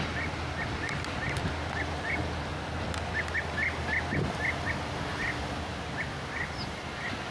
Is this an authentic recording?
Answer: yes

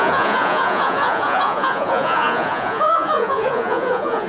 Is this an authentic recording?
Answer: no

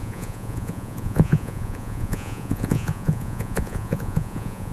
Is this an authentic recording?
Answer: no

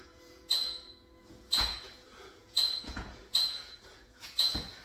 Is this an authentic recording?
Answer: no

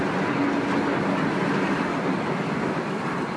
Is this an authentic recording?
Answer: yes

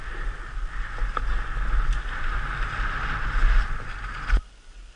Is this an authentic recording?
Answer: yes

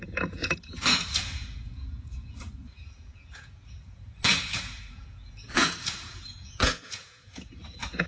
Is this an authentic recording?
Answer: no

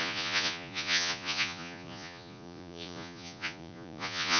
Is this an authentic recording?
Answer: no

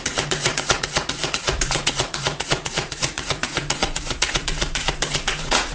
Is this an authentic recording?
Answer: no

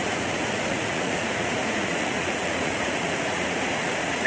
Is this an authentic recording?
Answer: no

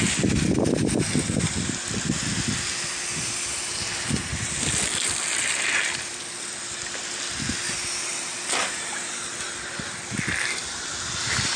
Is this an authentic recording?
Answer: yes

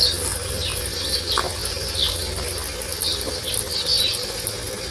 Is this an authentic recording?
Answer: yes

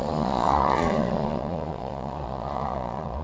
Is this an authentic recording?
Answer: no